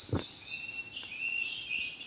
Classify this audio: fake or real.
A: real